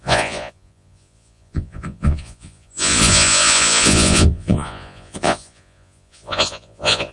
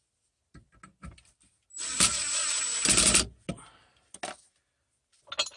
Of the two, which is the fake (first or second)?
first